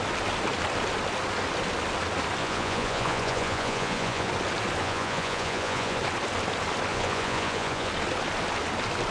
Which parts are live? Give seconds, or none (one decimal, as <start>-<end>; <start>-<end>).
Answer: 0.0-2.4; 4.3-4.8; 6.0-6.9; 7.9-9.1

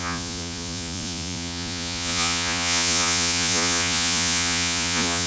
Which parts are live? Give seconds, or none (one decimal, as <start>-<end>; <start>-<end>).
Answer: none

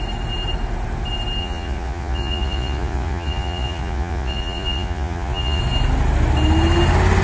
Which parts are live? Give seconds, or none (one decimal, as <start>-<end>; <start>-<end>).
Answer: 0.0-1.4; 5.6-7.2

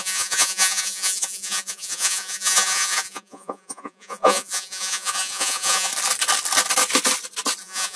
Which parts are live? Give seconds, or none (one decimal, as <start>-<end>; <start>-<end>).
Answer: 5.9-7.6